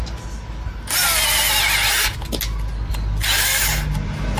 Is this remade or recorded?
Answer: recorded